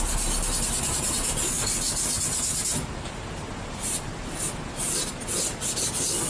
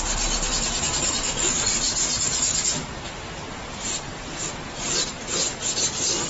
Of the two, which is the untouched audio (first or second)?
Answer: first